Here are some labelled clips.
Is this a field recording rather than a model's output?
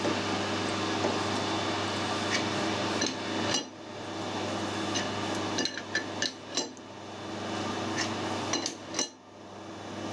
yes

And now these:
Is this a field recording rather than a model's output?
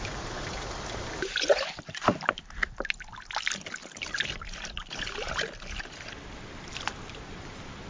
yes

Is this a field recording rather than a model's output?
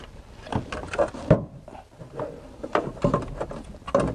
yes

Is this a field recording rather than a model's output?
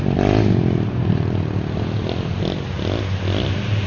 yes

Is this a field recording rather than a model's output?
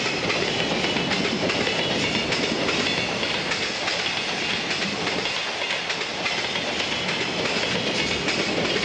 yes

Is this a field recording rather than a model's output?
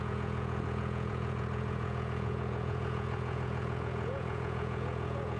no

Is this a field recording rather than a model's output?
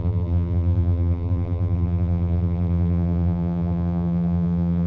no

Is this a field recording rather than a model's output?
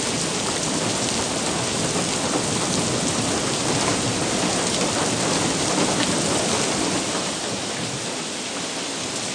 yes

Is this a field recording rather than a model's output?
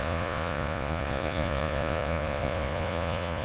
no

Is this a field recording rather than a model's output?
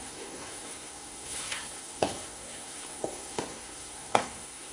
no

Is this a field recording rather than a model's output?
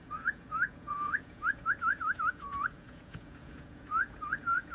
no